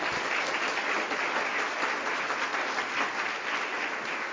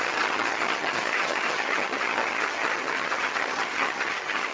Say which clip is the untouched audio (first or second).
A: first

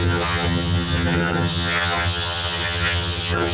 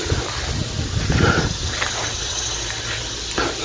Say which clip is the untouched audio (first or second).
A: second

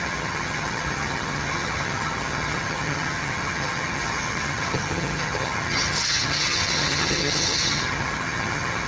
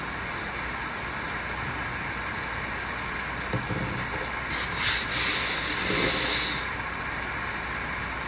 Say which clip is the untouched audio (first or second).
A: second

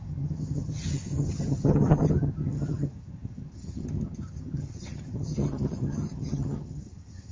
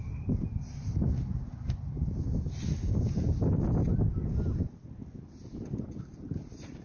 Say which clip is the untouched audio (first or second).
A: second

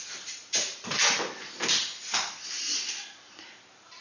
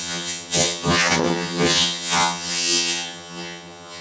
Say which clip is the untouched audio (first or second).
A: first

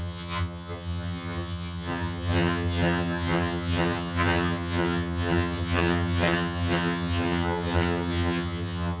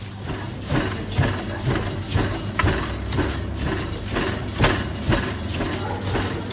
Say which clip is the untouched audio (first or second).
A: second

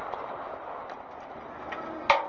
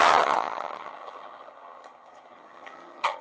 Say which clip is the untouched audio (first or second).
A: first